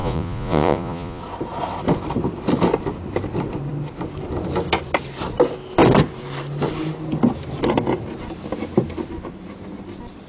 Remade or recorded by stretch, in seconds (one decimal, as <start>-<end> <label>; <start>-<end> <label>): 0.0-1.2 remade; 1.2-10.3 recorded